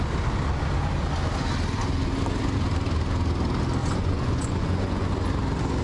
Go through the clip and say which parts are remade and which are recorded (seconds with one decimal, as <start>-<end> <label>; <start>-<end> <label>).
0.0-3.8 recorded; 3.8-5.1 remade; 5.1-5.8 recorded